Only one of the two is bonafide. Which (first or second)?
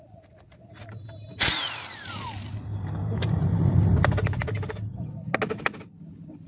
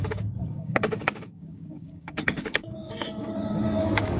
first